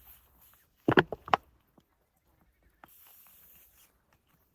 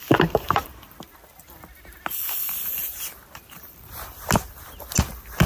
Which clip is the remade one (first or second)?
second